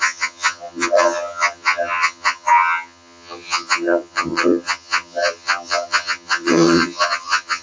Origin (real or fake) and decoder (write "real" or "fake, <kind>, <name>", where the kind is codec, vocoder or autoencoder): fake, vocoder, HiFi-GAN